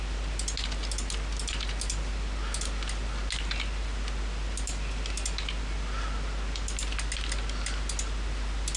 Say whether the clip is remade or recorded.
recorded